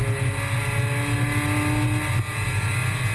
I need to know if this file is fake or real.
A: real